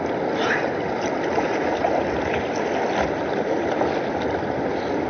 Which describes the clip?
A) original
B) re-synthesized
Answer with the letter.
A